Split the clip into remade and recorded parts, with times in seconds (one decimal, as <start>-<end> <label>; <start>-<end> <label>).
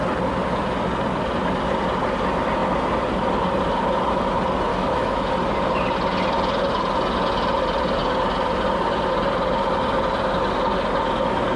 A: 0.0-4.7 recorded; 4.7-5.3 remade; 5.3-11.6 recorded